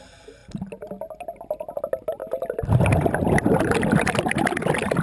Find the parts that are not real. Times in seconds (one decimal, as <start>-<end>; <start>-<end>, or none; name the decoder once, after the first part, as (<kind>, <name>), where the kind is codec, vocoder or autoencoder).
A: none

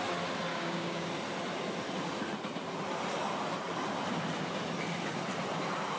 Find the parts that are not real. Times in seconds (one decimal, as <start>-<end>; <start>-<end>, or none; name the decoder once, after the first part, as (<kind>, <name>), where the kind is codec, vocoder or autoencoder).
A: 0.5-1.1 (codec, DAC)

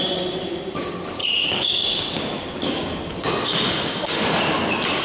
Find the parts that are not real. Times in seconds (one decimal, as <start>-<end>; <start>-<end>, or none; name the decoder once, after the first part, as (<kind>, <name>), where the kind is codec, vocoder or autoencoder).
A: 1.2-4.2 (codec, DAC)

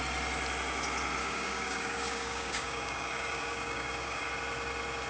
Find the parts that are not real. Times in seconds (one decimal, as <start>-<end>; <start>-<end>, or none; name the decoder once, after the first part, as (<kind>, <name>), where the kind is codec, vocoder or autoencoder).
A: 1.2-4.3 (codec, DAC)

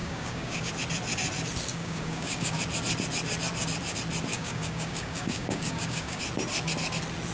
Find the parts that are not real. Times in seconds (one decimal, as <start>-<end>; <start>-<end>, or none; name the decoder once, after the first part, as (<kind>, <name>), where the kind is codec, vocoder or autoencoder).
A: 0.0-0.7 (codec, DAC); 1.7-2.6; 4.3-6.2

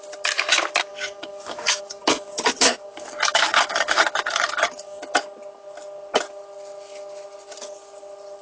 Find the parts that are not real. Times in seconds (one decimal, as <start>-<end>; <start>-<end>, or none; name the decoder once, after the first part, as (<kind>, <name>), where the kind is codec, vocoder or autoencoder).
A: 0.9-5.0 (codec, DAC)